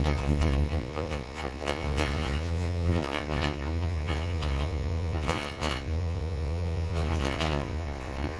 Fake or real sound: fake